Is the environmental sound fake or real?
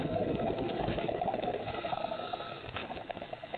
fake